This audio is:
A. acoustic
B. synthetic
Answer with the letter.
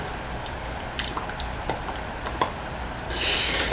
A